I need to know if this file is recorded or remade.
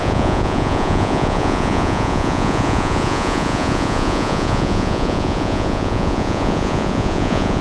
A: remade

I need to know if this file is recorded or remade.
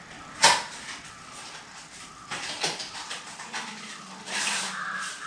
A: recorded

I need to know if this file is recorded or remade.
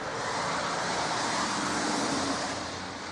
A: remade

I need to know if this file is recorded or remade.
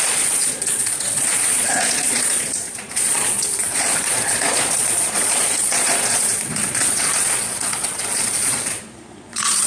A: remade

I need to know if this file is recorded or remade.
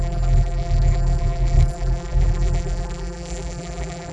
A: remade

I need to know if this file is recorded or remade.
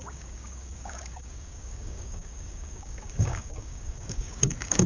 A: remade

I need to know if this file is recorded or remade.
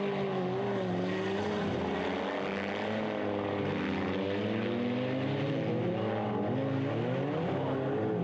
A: recorded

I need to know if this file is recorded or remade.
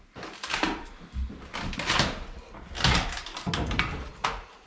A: recorded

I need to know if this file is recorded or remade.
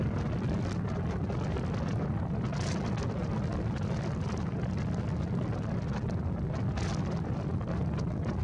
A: recorded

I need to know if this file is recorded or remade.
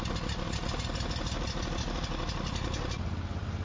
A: recorded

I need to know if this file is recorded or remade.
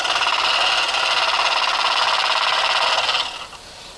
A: recorded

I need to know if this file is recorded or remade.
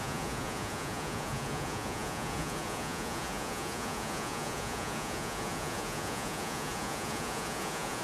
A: remade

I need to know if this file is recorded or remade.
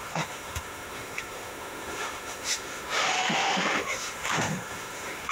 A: remade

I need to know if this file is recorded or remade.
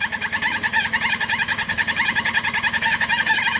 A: remade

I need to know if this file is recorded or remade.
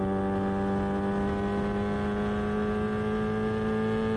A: recorded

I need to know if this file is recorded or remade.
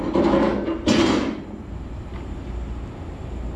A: recorded